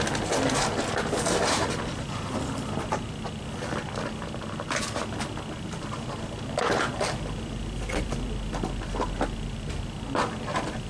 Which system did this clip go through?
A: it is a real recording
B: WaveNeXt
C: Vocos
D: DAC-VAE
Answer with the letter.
A